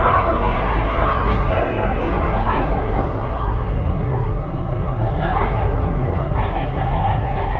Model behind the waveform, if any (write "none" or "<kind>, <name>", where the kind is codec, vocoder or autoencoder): codec, SNAC